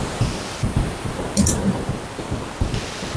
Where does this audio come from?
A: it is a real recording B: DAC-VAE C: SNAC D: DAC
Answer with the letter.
A